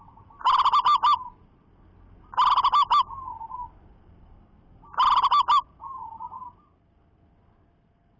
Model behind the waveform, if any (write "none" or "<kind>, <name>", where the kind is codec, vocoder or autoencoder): none